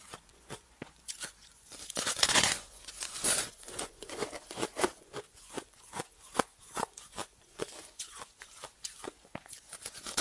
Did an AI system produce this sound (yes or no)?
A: yes